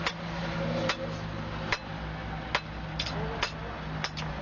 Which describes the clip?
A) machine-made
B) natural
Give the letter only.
B